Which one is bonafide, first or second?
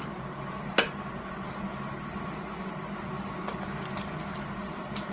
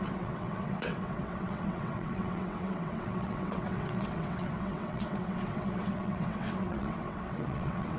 first